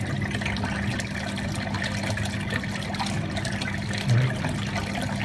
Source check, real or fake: real